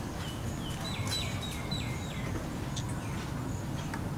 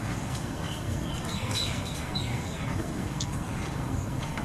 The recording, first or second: first